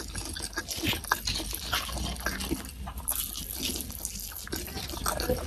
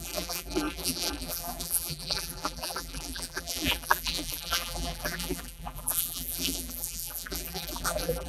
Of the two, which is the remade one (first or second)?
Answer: second